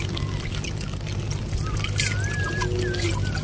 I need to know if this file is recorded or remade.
recorded